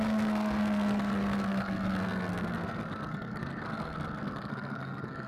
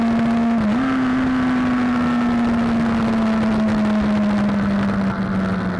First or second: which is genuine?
second